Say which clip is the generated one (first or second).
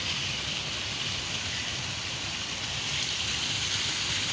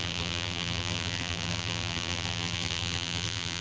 second